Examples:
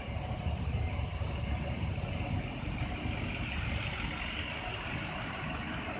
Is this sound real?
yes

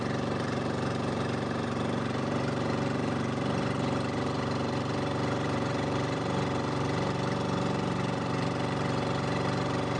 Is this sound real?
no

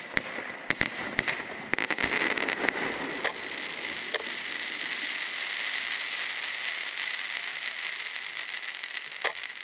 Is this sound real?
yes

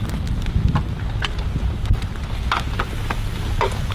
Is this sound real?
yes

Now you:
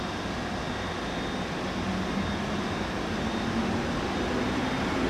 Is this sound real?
yes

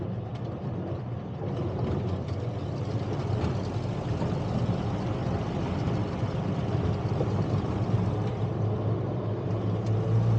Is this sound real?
yes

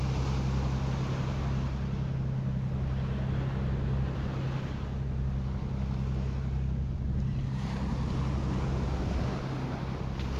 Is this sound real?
yes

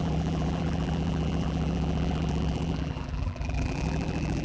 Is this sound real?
no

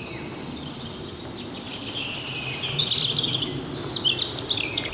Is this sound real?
yes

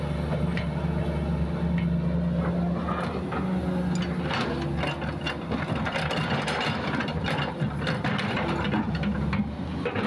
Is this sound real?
yes